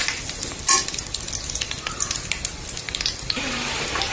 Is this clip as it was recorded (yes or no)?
yes